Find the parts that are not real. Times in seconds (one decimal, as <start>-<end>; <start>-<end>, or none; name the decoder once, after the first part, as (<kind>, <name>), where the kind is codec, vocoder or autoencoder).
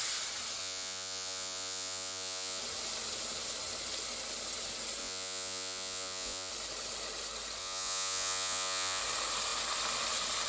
0.6-2.6 (vocoder, Vocos); 5.0-6.5; 7.6-9.0